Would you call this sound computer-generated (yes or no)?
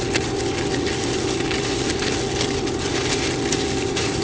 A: no